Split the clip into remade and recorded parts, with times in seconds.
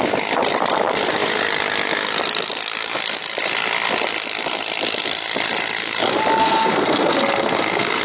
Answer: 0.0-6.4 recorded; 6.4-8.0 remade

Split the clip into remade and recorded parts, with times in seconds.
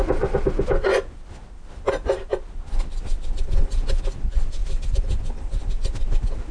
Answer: 0.0-4.6 recorded; 4.6-5.5 remade; 5.5-6.5 recorded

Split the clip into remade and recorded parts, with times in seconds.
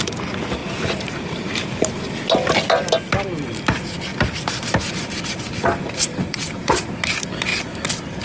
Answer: 0.0-0.6 recorded; 0.6-2.1 remade; 2.1-4.1 recorded; 4.1-6.8 remade; 6.8-8.2 recorded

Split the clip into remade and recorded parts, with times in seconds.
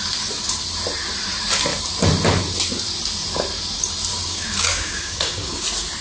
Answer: 0.0-4.1 recorded; 4.1-5.6 remade; 5.6-6.0 recorded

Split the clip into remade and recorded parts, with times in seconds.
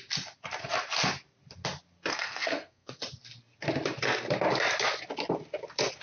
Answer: 0.0-2.1 recorded; 2.1-3.0 remade; 3.0-6.0 recorded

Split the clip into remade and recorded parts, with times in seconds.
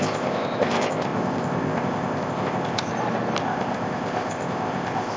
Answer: 0.0-2.9 remade; 2.9-3.4 recorded; 3.4-5.2 remade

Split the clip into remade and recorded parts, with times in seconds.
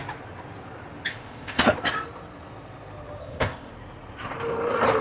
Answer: 0.0-1.1 recorded; 1.1-1.6 remade; 1.6-3.2 recorded; 3.2-3.7 remade; 3.7-5.0 recorded